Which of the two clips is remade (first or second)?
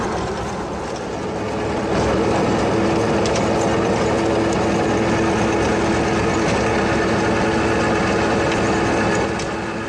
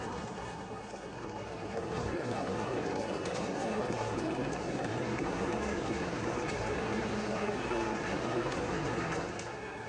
second